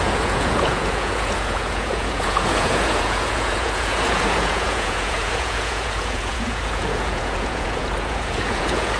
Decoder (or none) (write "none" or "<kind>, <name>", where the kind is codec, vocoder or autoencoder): vocoder, Vocos